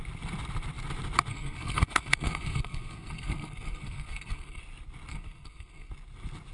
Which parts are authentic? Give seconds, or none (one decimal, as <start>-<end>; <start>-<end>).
0.0-1.3; 4.6-5.1; 5.9-6.5